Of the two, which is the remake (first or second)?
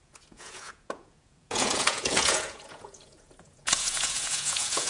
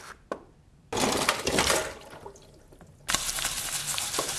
first